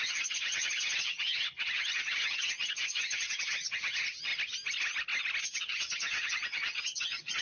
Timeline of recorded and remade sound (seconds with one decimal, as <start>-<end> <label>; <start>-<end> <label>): 0.0-4.3 remade; 4.3-5.4 recorded; 5.4-7.4 remade

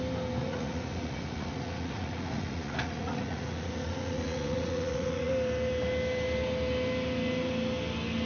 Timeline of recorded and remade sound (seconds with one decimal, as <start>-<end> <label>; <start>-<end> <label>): 0.0-0.4 recorded; 0.4-5.3 remade; 5.3-8.3 recorded